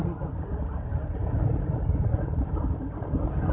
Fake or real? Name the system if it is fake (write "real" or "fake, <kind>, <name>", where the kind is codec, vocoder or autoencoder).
real